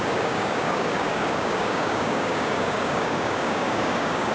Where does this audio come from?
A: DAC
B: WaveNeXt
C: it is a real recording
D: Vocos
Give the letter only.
A